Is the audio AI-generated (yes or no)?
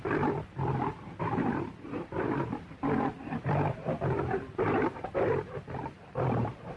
yes